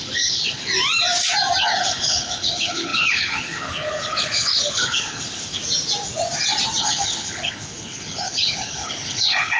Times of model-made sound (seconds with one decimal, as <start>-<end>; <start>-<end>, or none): 0.0-0.7; 1.6-5.6; 6.8-9.6